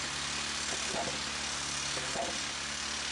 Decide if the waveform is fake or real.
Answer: real